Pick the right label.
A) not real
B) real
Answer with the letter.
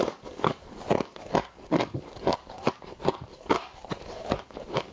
A